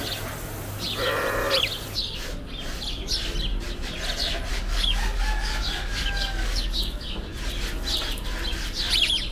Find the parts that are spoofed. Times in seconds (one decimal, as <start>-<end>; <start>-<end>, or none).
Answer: 4.5-7.3